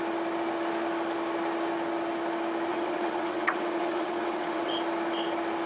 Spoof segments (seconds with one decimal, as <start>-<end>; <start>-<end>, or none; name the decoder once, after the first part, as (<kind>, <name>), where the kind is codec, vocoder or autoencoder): 2.7-4.7 (vocoder, WaveNeXt)